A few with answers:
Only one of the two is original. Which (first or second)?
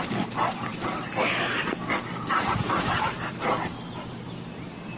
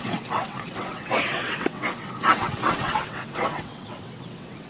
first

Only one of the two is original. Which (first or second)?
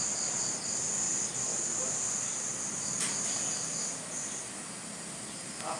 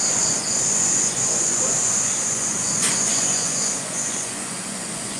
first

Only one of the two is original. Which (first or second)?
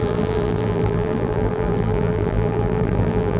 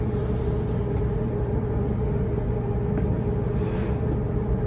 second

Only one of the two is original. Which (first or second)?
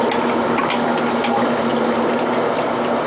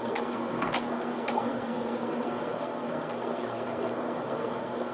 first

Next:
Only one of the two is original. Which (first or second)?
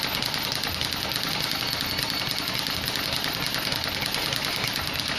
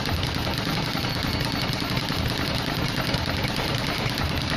first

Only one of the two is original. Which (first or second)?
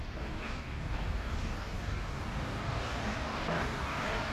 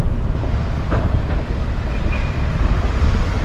second